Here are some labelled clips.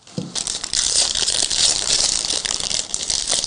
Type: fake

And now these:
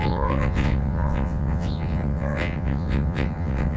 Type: fake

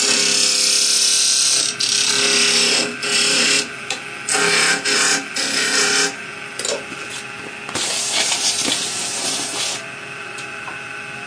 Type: real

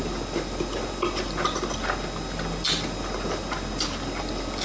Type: real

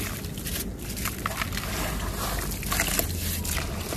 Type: real